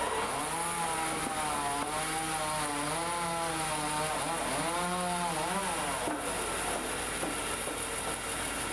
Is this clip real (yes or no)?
yes